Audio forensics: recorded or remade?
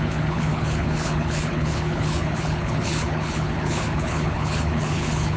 remade